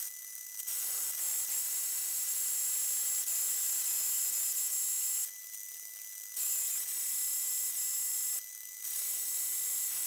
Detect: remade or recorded recorded